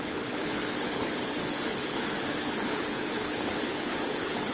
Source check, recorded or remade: remade